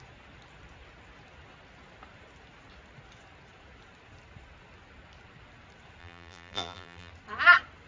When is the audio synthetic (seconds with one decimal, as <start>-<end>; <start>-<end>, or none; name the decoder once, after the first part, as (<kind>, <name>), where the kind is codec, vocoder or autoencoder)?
6.0-7.1 (vocoder, BigVGAN v2)